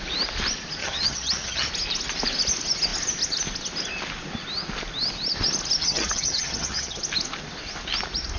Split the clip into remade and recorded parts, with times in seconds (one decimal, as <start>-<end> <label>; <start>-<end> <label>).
0.0-0.8 recorded; 0.8-1.7 remade; 1.7-5.8 recorded; 5.8-7.0 remade; 7.0-8.4 recorded